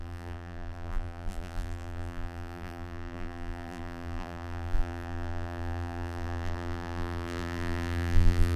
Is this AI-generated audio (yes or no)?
yes